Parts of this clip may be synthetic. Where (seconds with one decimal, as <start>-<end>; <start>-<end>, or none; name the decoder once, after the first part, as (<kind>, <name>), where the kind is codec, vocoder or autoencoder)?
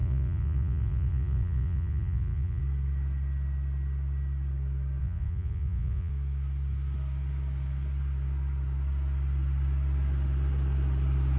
0.0-2.6 (vocoder, Vocos); 5.0-6.1